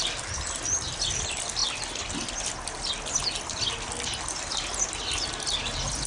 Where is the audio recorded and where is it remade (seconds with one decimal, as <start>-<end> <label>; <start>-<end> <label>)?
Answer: 0.0-6.1 recorded